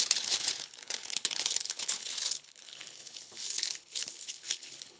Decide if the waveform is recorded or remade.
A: remade